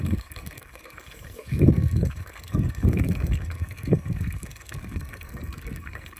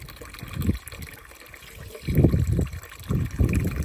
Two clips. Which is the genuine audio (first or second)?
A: second